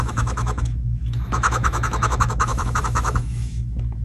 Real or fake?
fake